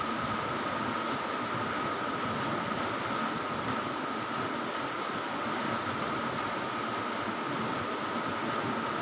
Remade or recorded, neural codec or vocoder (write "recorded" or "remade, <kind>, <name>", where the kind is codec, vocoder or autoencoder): recorded